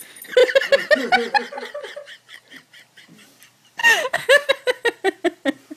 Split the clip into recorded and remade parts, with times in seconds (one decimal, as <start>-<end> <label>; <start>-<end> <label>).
0.0-3.8 recorded; 3.8-4.5 remade; 4.5-5.8 recorded